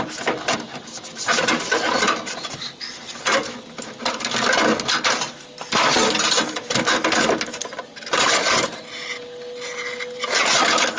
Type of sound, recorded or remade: recorded